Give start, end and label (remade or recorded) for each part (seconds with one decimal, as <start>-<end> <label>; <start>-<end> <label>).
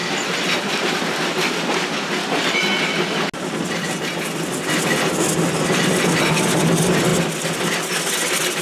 0.0-8.6 recorded